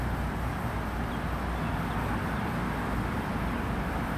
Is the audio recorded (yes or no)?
yes